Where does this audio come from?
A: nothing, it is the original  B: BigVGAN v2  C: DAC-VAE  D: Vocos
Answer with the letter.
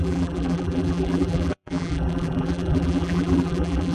B